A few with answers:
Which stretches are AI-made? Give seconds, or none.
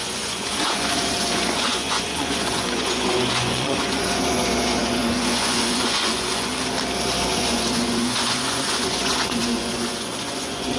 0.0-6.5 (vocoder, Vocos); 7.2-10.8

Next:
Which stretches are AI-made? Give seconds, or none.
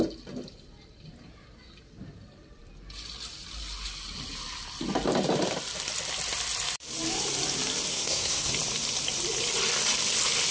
7.9-8.5 (codec, SNAC)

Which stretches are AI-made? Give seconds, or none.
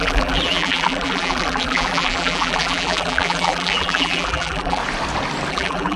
0.0-4.8 (vocoder, BigVGAN v2); 5.5-6.0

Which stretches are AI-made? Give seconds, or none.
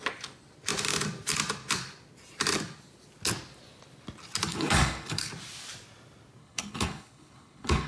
4.5-5.3 (codec, HILCodec); 6.4-7.9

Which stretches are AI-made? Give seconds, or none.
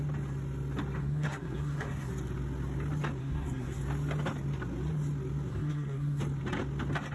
1.0-2.1 (codec, SNAC); 3.2-3.8; 5.5-6.2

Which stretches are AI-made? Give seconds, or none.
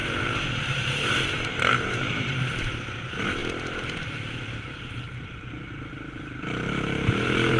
0.0-7.6 (vocoder, BigVGAN v2)